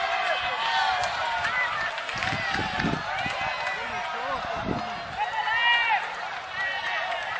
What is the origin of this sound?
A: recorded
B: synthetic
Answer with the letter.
A